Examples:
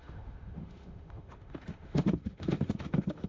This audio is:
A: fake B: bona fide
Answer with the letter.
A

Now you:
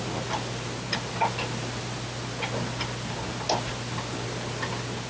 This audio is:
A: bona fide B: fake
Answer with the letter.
A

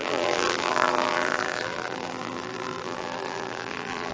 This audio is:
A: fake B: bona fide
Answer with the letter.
A